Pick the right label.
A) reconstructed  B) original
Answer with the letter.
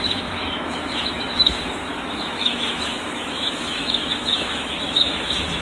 A